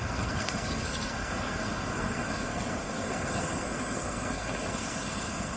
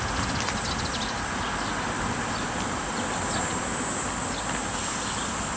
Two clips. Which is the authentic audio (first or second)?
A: second